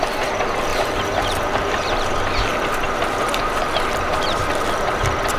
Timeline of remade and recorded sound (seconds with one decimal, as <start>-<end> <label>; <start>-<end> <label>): 0.0-0.7 recorded; 0.7-2.1 remade; 2.1-5.4 recorded